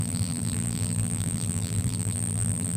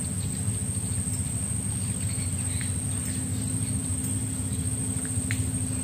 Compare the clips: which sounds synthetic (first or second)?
first